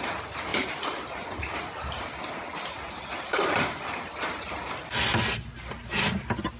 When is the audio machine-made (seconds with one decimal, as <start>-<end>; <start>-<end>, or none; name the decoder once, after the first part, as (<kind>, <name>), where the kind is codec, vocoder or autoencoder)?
0.5-1.2 (vocoder, BigVGAN v2); 3.3-4.1